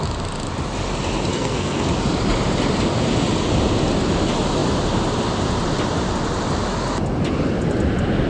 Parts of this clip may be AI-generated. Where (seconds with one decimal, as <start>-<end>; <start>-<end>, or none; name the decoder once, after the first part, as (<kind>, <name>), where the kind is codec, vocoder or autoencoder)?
1.3-1.9 (codec, SNAC)